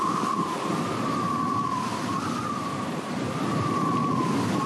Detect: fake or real fake